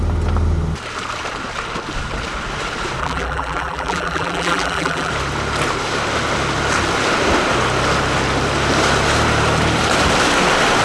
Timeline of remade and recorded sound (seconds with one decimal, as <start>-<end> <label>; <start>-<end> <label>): 0.0-3.0 recorded; 3.0-5.1 remade; 5.1-10.8 recorded